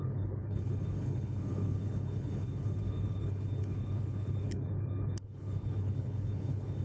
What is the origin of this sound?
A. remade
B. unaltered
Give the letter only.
A